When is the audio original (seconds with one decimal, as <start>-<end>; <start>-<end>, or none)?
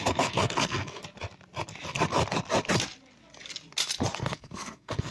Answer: 1.0-4.1